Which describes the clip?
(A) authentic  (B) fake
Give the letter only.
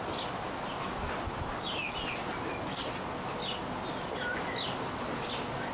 A